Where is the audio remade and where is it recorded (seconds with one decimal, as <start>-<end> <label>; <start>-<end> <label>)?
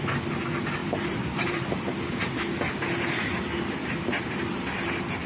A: 0.0-0.8 recorded; 0.8-2.0 remade; 2.0-5.3 recorded